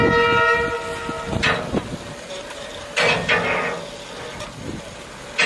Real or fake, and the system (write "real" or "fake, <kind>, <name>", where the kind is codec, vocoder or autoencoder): real